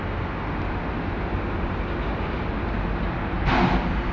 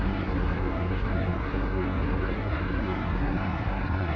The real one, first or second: first